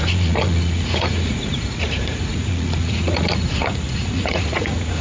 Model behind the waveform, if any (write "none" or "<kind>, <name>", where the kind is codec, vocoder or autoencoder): vocoder, Vocos